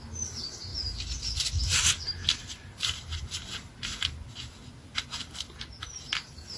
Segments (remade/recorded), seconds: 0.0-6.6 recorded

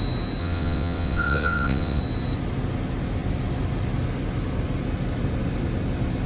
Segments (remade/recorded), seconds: 0.0-0.4 recorded; 0.4-2.0 remade; 2.0-6.3 recorded

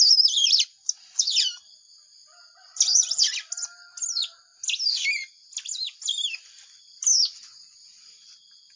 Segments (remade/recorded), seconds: 0.0-8.8 recorded

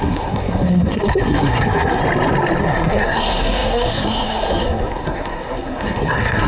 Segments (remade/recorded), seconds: 0.0-2.0 remade; 2.0-2.6 recorded; 2.6-6.5 remade

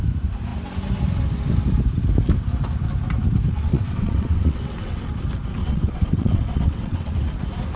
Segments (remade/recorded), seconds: 0.0-3.5 recorded; 3.5-5.1 remade; 5.1-5.6 recorded; 5.6-7.1 remade; 7.1-7.8 recorded

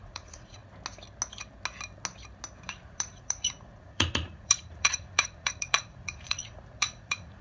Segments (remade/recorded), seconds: 0.0-0.6 remade; 0.6-2.7 recorded; 2.7-7.4 remade